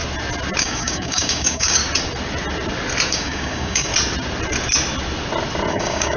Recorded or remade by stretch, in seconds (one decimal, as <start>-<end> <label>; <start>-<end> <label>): 0.0-0.6 recorded; 0.6-1.8 remade; 1.8-3.1 recorded; 3.1-3.9 remade; 3.9-5.7 recorded; 5.7-6.2 remade